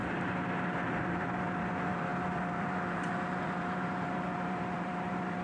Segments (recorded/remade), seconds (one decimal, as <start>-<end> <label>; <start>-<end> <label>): 0.0-0.9 recorded; 0.9-5.4 remade